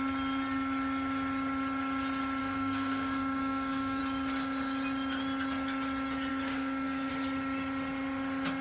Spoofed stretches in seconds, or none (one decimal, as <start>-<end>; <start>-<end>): 2.4-4.0; 6.3-7.1